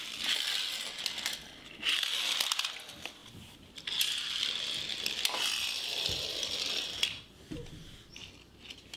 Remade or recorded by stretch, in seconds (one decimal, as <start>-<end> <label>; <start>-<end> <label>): 0.0-9.0 recorded